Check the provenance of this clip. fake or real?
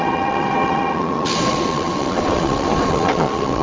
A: fake